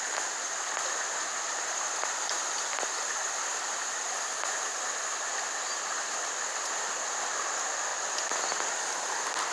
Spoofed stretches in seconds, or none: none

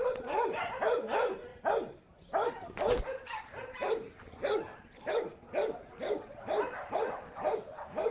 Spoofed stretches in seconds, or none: 0.0-1.5 (vocoder, BigVGAN v2); 2.5-5.3; 6.0-8.1

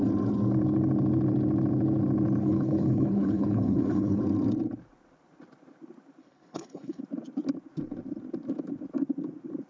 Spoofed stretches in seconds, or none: 2.4-4.2 (codec, HILCodec); 6.2-7.0